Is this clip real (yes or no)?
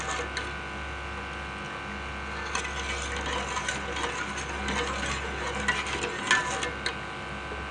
yes